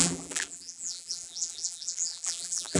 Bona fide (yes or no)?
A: no